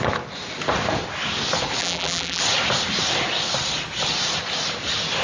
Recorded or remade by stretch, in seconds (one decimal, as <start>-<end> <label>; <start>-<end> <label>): 0.0-1.8 recorded; 1.8-2.4 remade; 2.4-5.2 recorded